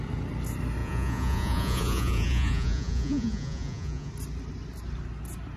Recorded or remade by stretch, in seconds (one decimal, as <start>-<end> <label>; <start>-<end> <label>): 0.0-0.8 recorded; 0.8-4.1 remade; 4.1-5.6 recorded